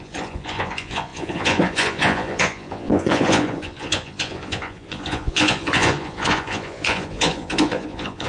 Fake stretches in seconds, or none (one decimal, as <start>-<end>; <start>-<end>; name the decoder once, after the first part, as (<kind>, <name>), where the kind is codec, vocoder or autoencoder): 0.0-8.3 (vocoder, Vocos)